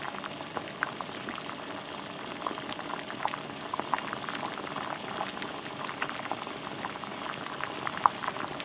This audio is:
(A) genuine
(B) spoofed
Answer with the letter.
A